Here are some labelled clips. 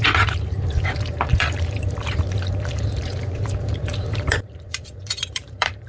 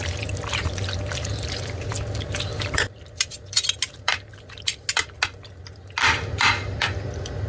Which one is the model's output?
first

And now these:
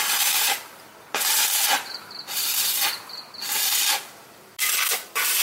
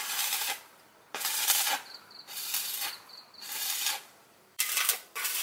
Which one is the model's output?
second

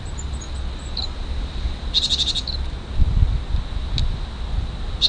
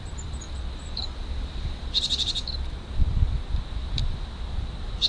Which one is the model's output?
second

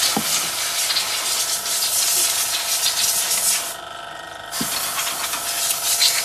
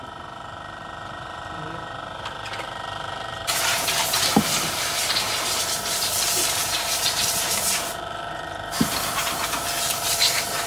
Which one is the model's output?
second